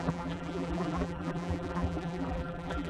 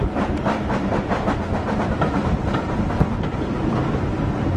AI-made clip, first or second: first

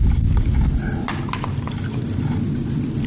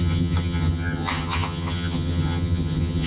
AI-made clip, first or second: second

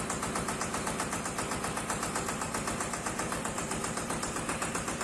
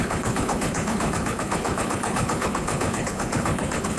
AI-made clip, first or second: second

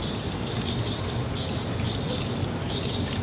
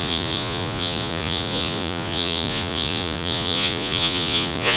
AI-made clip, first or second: second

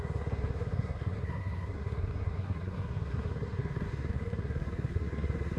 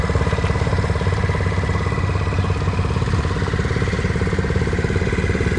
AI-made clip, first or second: first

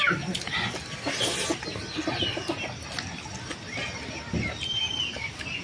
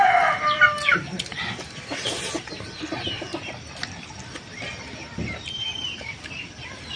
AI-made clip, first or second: second